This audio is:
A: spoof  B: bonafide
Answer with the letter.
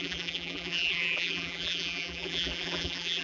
A